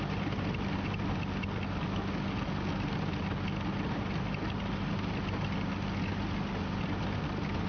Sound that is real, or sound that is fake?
real